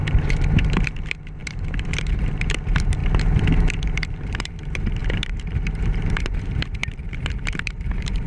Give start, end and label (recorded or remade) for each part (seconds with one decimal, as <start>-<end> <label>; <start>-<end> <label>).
0.0-8.3 remade